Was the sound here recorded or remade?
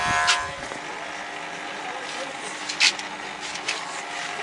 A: recorded